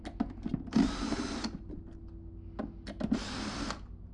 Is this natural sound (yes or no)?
yes